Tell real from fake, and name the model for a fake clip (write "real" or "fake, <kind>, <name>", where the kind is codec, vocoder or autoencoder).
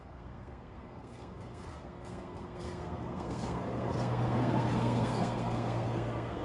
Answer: fake, codec, SNAC